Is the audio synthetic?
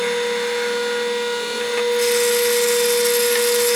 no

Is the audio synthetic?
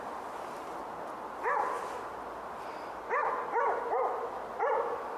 no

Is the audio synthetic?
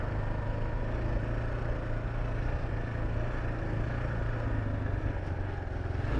no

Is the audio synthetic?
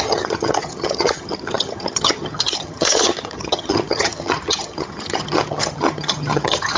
yes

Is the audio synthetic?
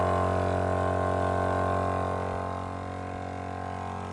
no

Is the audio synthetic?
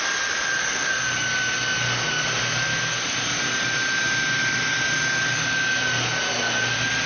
no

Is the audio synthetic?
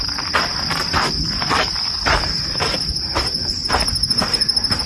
no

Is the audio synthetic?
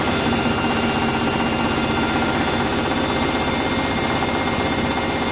no